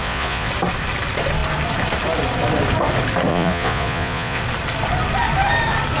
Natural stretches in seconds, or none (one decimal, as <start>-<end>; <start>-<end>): 0.5-3.3; 4.4-6.0